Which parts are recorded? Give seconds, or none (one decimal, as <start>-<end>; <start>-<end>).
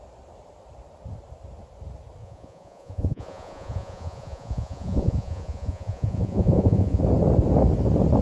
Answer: 0.0-2.2; 7.0-8.2